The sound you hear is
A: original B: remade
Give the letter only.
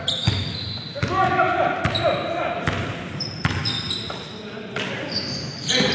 A